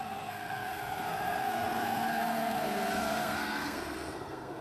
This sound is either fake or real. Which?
fake